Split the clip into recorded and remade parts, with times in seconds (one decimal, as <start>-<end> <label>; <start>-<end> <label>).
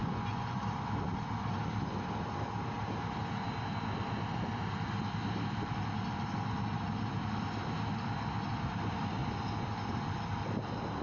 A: 0.0-0.6 remade; 0.6-11.0 recorded